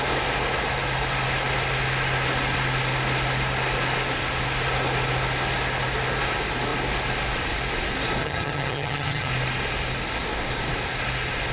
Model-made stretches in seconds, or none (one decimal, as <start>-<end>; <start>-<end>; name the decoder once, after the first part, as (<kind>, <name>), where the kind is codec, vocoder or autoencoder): 8.2-9.3 (vocoder, HiFi-GAN)